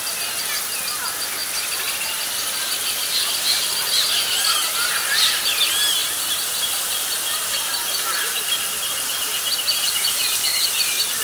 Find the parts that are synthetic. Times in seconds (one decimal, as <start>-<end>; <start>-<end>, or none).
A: 1.4-4.1; 6.0-10.7